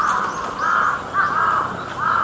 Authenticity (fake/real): real